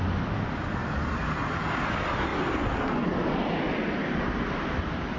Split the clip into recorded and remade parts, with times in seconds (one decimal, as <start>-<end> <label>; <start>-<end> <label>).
0.0-4.0 recorded; 4.0-4.8 remade; 4.8-5.2 recorded